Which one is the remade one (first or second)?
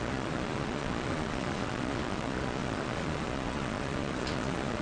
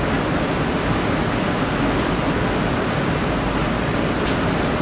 first